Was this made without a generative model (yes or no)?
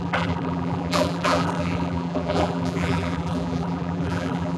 no